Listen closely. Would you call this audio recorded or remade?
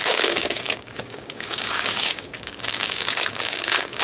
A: remade